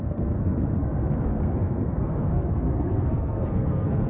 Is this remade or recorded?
remade